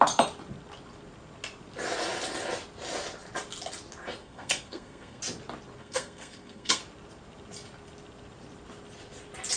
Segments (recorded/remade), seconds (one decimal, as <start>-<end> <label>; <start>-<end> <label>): 0.0-4.2 recorded; 4.2-5.2 remade; 5.2-5.8 recorded; 5.8-6.8 remade; 6.8-9.6 recorded